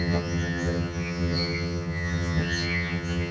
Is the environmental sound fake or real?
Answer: fake